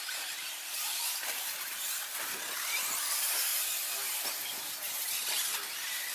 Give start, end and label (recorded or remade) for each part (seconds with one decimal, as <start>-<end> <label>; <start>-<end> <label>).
0.0-6.1 recorded